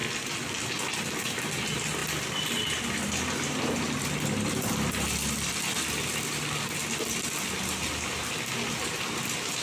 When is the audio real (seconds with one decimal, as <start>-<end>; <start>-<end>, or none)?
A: 0.0-1.4